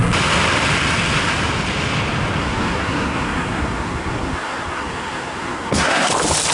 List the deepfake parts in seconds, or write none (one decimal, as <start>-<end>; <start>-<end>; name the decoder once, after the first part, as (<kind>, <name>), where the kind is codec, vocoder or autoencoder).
2.4-6.1 (codec, SNAC)